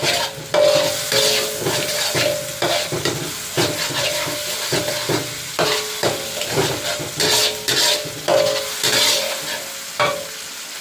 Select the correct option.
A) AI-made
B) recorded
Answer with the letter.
B